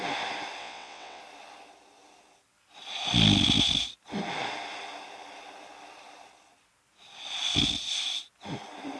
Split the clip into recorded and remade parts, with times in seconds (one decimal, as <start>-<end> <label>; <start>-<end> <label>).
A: 0.0-0.6 recorded; 0.6-1.2 remade; 1.2-9.0 recorded